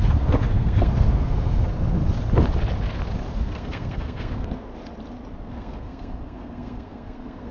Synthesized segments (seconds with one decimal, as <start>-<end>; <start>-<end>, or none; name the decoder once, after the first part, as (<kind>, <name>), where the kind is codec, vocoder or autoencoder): 0.0-2.0 (codec, SNAC); 3.3-4.7; 5.4-7.5